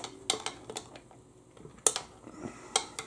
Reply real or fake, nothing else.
real